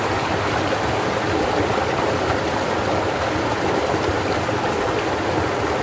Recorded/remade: recorded